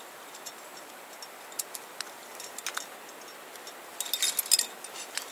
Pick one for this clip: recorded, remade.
recorded